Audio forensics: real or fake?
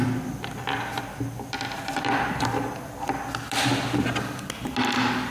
real